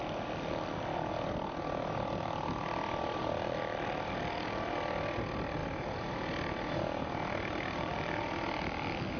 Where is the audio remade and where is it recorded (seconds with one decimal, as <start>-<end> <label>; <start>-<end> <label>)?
0.0-9.2 recorded